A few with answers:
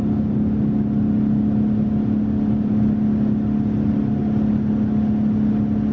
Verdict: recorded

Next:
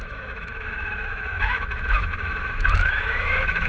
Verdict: remade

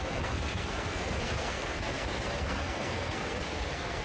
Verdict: remade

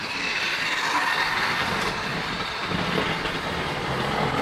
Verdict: recorded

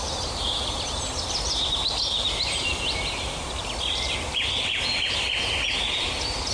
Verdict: recorded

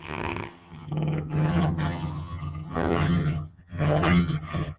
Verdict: remade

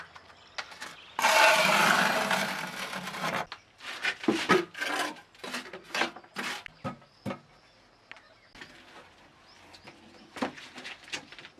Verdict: recorded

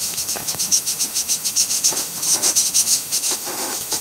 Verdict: remade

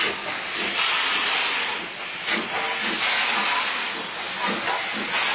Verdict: recorded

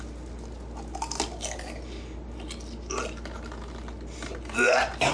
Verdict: recorded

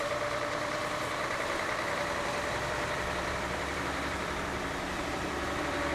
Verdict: remade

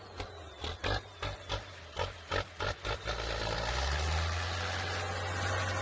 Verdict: recorded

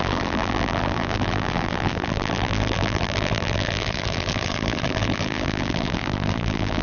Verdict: remade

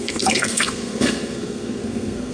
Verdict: remade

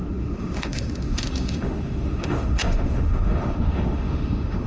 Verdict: remade